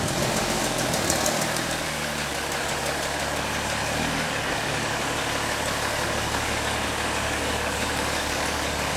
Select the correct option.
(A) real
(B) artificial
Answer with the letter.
B